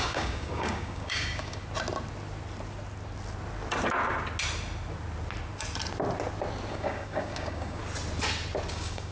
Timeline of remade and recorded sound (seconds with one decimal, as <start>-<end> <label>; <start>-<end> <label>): 0.0-1.6 remade; 1.6-6.7 recorded; 6.7-7.8 remade; 7.8-8.7 recorded; 8.7-9.1 remade